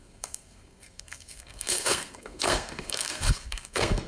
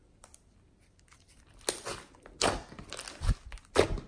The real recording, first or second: second